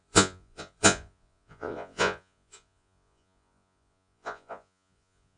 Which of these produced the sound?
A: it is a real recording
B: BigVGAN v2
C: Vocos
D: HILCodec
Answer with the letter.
C